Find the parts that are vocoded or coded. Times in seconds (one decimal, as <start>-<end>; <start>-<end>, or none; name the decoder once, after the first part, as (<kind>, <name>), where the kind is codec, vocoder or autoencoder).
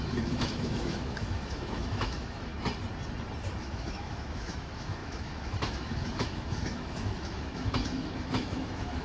0.0-2.5 (autoencoder, DAC-VAE); 3.6-9.0